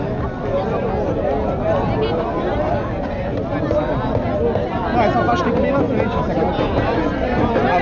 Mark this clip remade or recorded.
recorded